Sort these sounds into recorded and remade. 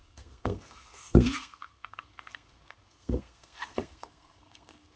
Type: remade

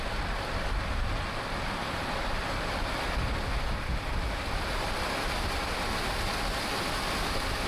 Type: recorded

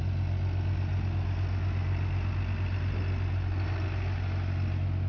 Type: recorded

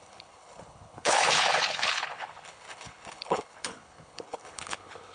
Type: remade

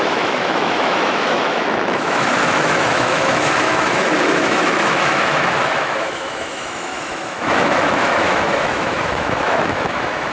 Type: remade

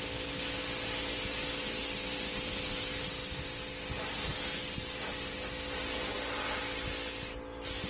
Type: recorded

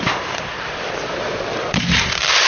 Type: remade